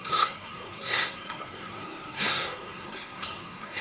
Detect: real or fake fake